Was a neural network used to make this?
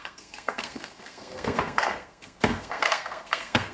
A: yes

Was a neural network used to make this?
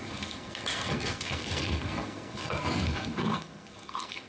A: yes